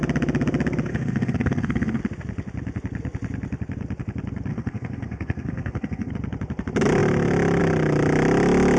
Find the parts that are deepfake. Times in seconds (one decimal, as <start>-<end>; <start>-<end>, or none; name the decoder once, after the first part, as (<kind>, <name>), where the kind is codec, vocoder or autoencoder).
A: 0.9-2.0 (codec, SNAC); 4.5-6.1